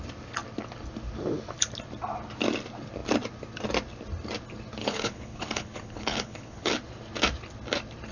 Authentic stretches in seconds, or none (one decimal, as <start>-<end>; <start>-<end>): 0.0-4.8; 6.7-8.1